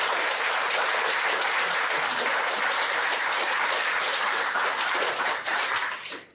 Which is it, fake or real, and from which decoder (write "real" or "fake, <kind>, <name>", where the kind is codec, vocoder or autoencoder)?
fake, vocoder, BigVGAN v2